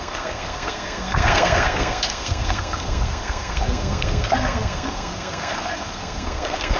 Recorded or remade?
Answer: remade